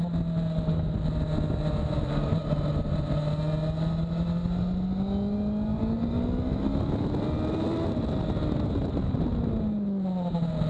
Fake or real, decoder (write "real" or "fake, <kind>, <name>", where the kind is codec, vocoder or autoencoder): real